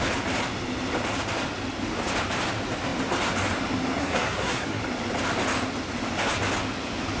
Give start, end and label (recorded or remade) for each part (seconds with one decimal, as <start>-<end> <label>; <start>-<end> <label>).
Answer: 0.0-4.0 recorded; 4.0-4.8 remade; 4.8-7.2 recorded